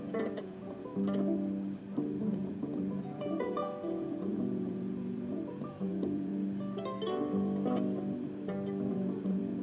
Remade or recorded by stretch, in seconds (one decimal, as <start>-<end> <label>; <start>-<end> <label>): 0.0-0.9 remade; 0.9-2.2 recorded; 2.2-6.3 remade; 6.3-8.9 recorded; 8.9-9.6 remade